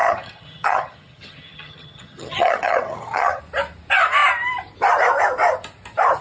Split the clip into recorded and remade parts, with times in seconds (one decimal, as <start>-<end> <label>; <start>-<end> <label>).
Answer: 0.0-3.4 remade; 3.4-6.2 recorded